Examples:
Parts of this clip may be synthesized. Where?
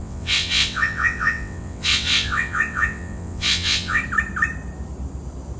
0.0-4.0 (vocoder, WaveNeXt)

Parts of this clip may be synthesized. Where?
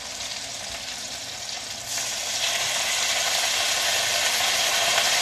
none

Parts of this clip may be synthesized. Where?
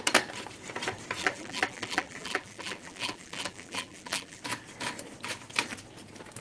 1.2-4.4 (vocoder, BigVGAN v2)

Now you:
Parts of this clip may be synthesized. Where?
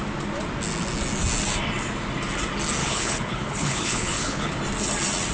2.8-4.6 (codec, HILCodec)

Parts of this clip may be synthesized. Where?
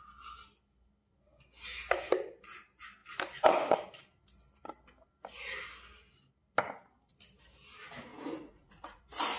8.1-9.0 (vocoder, Vocos)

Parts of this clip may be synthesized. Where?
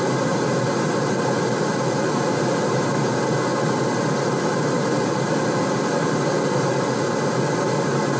none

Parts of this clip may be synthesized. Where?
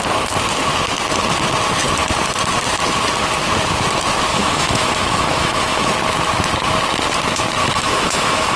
4.3-5.8 (autoencoder, DAC-VAE); 7.6-8.6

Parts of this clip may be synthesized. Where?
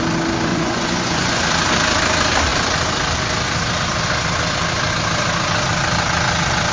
0.5-1.4 (vocoder, Vocos)